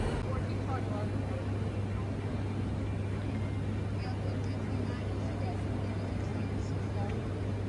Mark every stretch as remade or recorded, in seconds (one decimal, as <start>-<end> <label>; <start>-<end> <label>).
0.0-7.7 recorded